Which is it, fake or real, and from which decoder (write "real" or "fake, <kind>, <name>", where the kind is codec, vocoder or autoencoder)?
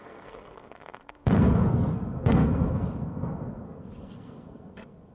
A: fake, codec, SNAC